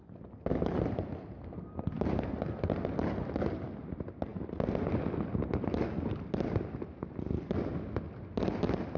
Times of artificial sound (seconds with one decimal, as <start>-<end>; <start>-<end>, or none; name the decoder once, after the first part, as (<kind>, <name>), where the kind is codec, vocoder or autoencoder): none